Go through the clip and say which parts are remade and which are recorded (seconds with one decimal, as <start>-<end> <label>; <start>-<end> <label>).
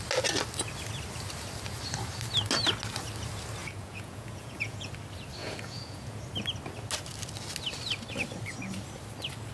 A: 0.0-3.6 recorded; 3.6-4.9 remade; 4.9-5.4 recorded; 5.4-6.2 remade; 6.2-9.5 recorded